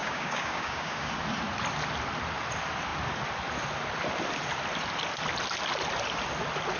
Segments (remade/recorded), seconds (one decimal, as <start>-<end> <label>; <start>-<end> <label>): 0.0-1.1 remade; 1.1-6.8 recorded